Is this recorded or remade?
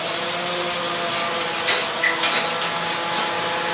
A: recorded